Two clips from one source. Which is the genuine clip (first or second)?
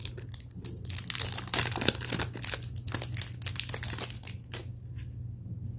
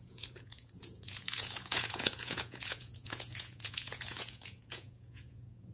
first